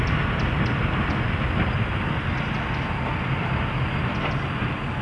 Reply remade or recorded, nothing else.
recorded